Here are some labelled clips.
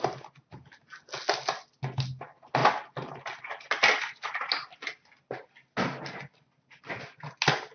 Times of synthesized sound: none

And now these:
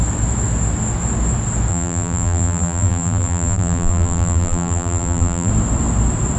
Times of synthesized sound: 1.7-5.5 (vocoder, BigVGAN v2)

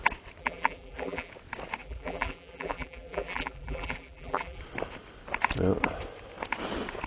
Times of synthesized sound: 0.4-1.3 (vocoder, BigVGAN v2); 1.8-4.6